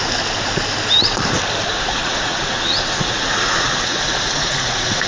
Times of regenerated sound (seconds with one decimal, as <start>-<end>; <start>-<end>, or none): 1.7-5.1